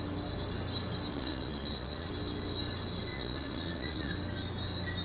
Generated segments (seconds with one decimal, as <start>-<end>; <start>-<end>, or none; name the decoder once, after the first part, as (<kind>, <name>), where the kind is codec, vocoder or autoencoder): 1.1-2.1 (vocoder, Vocos); 3.1-4.1